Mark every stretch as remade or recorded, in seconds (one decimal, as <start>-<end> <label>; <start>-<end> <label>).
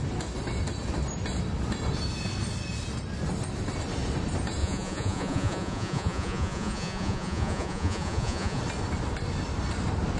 0.0-4.6 recorded; 4.6-8.6 remade; 8.6-10.2 recorded